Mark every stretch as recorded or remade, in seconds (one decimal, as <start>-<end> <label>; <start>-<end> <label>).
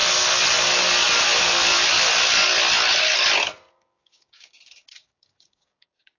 0.0-3.7 recorded; 3.7-6.2 remade